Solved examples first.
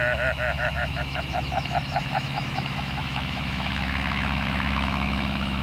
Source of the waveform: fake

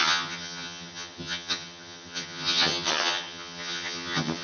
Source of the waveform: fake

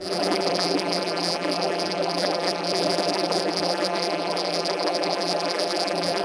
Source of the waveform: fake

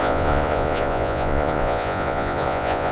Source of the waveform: fake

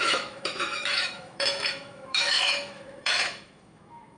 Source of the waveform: fake